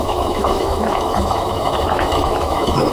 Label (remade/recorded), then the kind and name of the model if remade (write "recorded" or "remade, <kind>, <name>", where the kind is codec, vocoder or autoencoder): remade, autoencoder, DAC-VAE